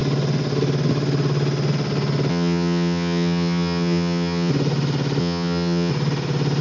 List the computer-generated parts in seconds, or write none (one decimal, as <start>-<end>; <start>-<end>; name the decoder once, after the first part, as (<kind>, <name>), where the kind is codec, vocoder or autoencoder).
2.3-4.5 (vocoder, HiFi-GAN); 5.2-5.9